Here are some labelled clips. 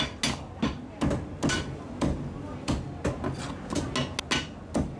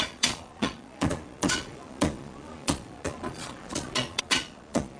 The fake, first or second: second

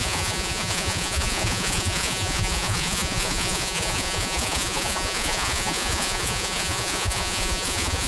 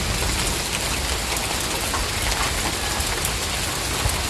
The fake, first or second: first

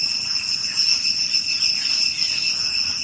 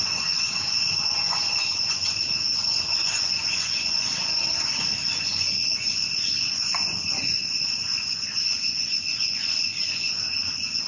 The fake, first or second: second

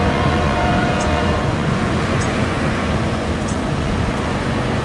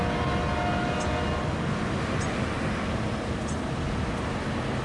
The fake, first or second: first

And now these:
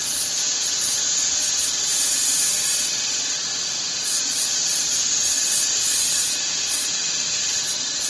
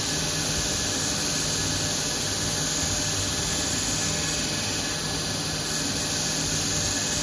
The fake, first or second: first